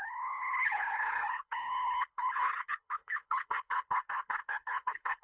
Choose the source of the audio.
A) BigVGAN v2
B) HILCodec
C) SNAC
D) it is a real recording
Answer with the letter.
B